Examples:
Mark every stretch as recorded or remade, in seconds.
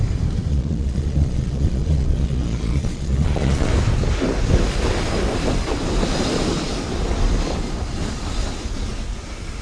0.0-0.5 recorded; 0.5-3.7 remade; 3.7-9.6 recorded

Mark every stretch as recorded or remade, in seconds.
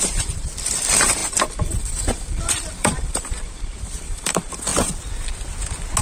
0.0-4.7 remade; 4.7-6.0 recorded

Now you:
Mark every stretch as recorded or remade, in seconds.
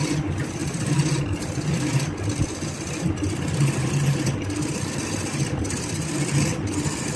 0.0-7.2 recorded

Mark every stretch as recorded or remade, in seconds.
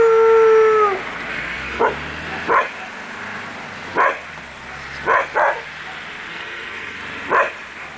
0.0-1.3 recorded; 1.3-1.8 remade; 1.8-6.3 recorded; 6.3-7.0 remade; 7.0-8.0 recorded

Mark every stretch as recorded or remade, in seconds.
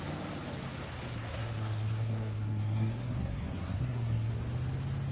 0.0-1.2 recorded; 1.2-4.3 remade; 4.3-5.1 recorded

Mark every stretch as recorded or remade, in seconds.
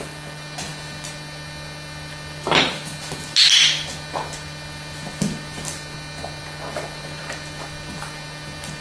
0.0-8.8 recorded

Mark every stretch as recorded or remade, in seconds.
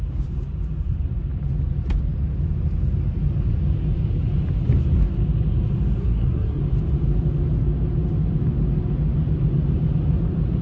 0.0-6.0 recorded; 6.0-6.6 remade; 6.6-10.6 recorded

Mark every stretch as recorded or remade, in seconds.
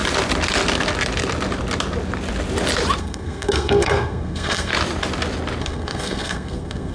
0.0-3.0 recorded; 3.0-4.7 remade; 4.7-5.6 recorded; 5.6-6.9 remade